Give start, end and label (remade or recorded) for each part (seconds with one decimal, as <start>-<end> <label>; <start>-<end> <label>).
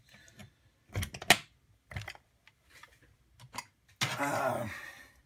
0.0-5.3 recorded